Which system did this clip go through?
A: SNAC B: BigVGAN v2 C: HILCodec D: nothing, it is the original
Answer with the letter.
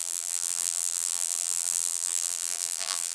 B